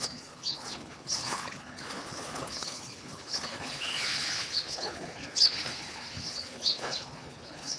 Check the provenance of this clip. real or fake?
fake